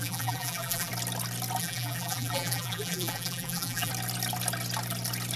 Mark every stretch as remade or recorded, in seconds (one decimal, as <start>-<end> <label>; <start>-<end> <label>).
0.0-0.9 remade; 0.9-1.6 recorded; 1.6-3.9 remade; 3.9-5.4 recorded